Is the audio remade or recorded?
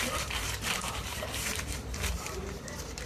remade